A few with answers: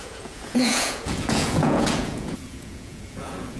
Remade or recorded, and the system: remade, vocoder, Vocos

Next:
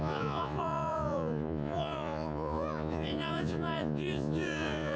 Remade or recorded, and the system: remade, vocoder, Vocos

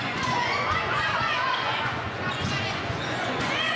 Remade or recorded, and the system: remade, vocoder, Vocos